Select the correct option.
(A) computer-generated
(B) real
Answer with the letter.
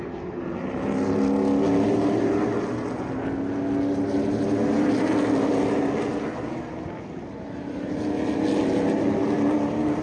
B